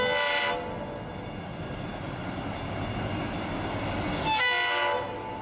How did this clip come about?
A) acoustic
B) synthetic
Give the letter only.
A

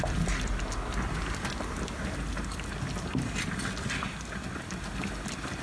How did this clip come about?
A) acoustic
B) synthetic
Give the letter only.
A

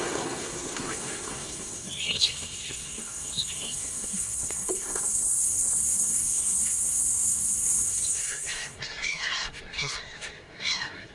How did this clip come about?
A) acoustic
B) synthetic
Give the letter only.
B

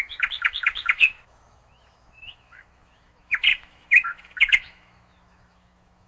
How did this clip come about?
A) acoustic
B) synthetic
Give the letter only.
B